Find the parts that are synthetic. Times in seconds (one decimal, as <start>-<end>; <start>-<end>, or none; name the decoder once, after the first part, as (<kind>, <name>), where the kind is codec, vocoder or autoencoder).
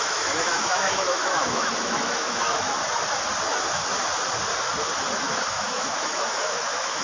0.0-2.8 (autoencoder, DAC-VAE); 5.2-7.0